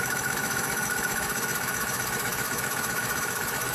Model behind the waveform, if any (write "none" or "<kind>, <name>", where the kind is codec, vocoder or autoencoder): autoencoder, DAC-VAE